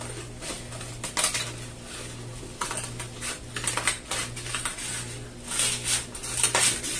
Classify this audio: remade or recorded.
recorded